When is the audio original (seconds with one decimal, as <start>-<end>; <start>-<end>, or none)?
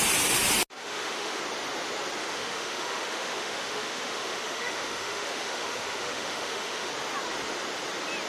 0.0-0.8; 1.4-2.2; 6.9-8.3